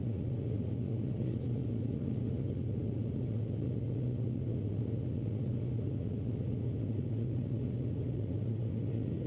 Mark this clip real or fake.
fake